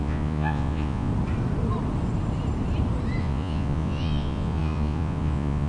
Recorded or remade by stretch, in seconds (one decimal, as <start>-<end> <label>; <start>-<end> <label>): 0.0-1.1 remade; 1.1-3.2 recorded; 3.2-5.7 remade